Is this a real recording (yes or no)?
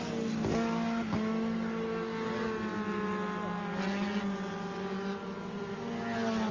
yes